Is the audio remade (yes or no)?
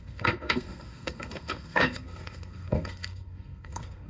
yes